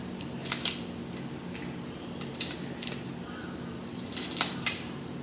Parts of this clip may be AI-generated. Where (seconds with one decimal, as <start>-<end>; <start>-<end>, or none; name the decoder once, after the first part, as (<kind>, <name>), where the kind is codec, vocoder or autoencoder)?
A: 0.0-0.4 (vocoder, BigVGAN v2); 3.0-5.2